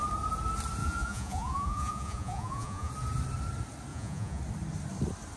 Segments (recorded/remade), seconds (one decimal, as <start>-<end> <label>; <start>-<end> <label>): 0.0-0.8 recorded; 0.8-2.9 remade; 2.9-3.9 recorded; 3.9-4.4 remade; 4.4-5.4 recorded